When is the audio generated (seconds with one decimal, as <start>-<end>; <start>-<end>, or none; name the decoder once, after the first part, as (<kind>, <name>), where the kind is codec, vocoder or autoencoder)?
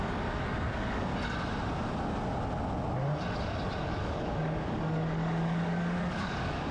0.0-1.1 (codec, DAC); 3.8-6.7